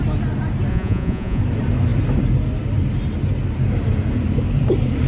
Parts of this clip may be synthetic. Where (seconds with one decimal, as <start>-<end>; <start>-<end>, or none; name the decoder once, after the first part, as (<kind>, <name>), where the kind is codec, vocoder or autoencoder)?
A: 0.7-1.4 (vocoder, Vocos)